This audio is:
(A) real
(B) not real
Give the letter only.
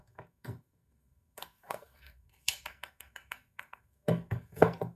B